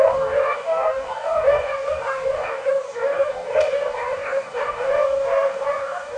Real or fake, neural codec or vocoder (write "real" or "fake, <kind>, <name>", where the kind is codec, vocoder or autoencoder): fake, codec, DAC